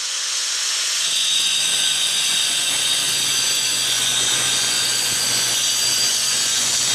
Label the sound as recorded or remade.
remade